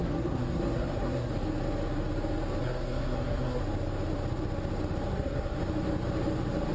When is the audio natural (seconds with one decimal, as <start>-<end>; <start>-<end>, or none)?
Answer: 1.3-2.6; 3.6-5.1; 5.6-6.7